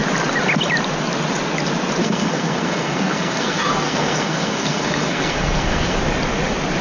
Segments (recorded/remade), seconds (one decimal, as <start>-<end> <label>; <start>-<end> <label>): 0.0-2.0 recorded; 2.0-6.0 remade; 6.0-6.8 recorded